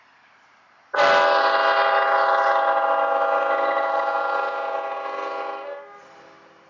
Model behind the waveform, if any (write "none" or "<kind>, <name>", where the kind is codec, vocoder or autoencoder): none